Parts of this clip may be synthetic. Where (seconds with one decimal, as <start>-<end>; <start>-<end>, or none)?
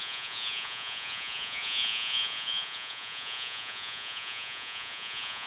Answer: 0.0-5.5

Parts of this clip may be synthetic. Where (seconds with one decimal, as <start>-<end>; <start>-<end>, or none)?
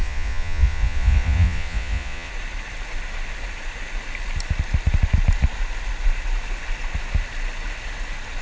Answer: 0.0-2.3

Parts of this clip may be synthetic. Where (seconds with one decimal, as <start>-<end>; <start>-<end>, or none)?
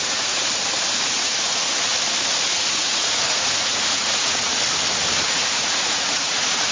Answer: 0.0-0.4; 1.0-1.9; 2.5-4.5; 5.2-6.7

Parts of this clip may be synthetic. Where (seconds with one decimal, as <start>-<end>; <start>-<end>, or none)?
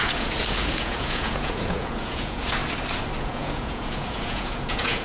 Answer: 0.0-2.6; 3.2-5.0